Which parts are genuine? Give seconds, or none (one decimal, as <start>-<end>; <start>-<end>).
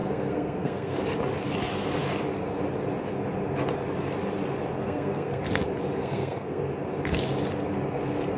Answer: 1.0-4.8; 5.4-6.0; 6.7-8.4